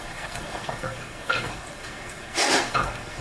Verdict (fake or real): fake